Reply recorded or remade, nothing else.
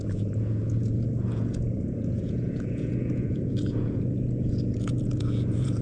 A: remade